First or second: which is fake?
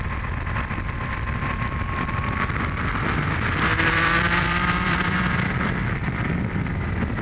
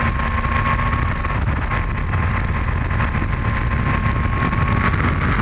first